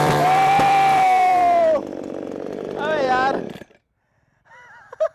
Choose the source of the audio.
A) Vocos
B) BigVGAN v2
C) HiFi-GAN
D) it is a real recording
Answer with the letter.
B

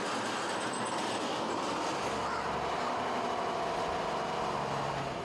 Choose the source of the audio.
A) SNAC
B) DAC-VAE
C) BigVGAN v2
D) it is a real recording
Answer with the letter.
D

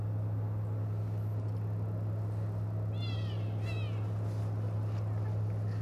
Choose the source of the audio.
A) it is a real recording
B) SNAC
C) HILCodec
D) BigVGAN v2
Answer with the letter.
A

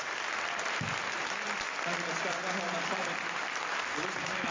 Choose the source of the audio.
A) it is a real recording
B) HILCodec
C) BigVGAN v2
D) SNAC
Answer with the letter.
C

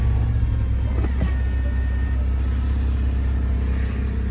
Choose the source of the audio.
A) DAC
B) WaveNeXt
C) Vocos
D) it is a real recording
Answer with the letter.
D